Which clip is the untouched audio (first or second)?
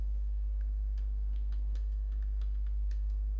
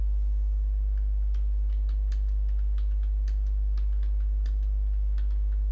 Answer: second